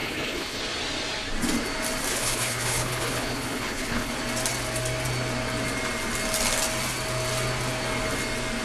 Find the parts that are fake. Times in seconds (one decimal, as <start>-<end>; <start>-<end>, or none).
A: 0.0-0.6; 2.1-4.1